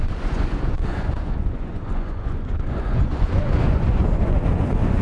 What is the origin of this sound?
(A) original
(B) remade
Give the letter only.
B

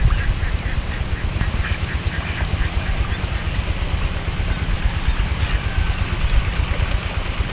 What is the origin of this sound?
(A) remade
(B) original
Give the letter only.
B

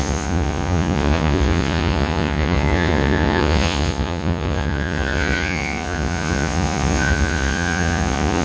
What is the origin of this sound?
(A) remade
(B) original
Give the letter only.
A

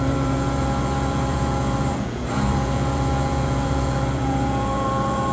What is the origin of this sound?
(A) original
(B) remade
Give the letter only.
B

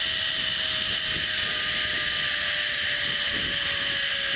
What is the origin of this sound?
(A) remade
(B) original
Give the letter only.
B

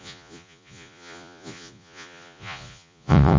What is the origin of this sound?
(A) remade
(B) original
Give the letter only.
A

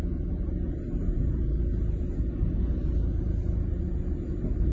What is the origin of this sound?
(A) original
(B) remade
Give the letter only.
A